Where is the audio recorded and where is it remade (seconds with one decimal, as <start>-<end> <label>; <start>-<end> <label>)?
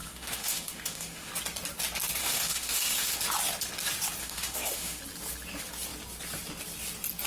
0.0-1.3 remade; 1.3-2.2 recorded; 2.2-3.2 remade; 3.2-4.2 recorded; 4.2-5.0 remade; 5.0-7.3 recorded